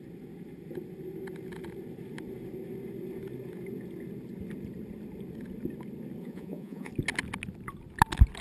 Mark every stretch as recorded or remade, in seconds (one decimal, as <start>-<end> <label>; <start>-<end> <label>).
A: 0.0-6.2 recorded; 6.2-6.9 remade; 6.9-8.4 recorded